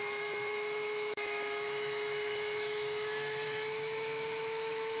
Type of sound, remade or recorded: remade